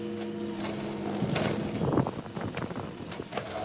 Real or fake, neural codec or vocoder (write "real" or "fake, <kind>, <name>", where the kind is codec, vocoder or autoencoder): real